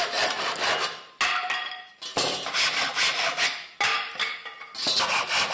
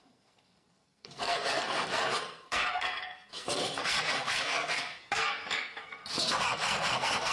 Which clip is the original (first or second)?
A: first